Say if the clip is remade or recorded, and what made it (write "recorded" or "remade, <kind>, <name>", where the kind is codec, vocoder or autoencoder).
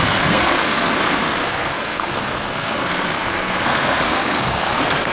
remade, codec, SNAC